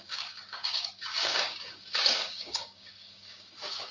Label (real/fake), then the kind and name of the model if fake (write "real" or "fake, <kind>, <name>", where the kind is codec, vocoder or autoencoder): fake, codec, DAC